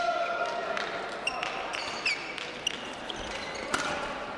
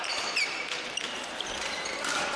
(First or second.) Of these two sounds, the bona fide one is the first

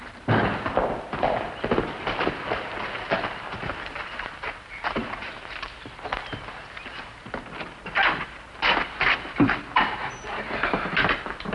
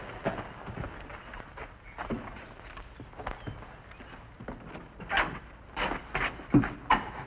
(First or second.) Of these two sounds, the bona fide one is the second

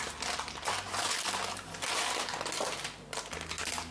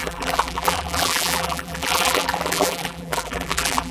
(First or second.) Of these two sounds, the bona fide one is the first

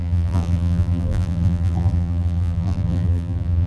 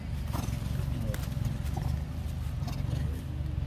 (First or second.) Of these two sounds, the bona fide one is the second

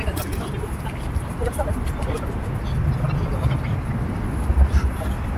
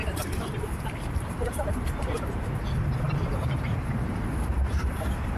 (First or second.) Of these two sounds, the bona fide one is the first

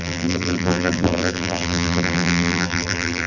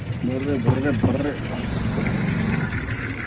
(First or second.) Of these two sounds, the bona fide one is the second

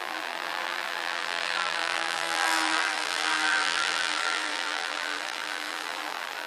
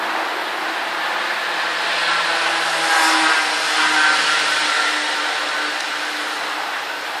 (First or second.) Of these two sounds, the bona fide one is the second